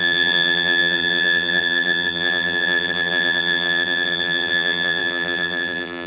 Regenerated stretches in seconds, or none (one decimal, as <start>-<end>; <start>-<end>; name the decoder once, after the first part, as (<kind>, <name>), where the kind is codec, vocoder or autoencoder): 0.0-6.1 (vocoder, BigVGAN v2)